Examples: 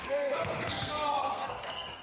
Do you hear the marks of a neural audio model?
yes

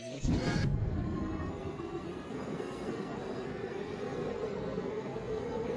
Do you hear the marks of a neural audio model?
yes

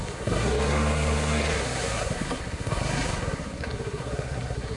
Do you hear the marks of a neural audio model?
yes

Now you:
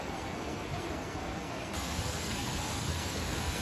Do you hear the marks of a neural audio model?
yes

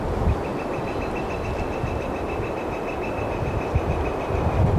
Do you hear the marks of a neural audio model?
no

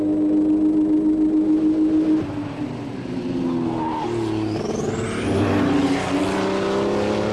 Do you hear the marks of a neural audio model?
no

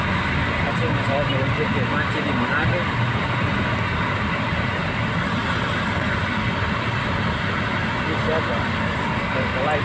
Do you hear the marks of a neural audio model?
no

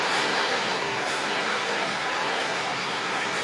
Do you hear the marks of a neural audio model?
yes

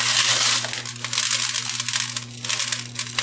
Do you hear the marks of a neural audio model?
no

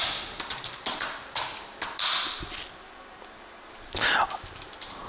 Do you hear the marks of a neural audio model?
no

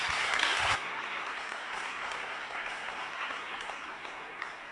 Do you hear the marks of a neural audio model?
yes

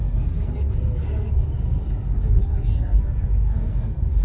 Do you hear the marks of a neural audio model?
yes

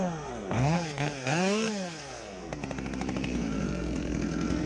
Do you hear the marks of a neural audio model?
yes